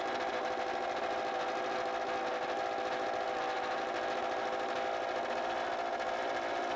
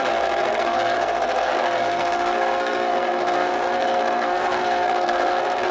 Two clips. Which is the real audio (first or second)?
first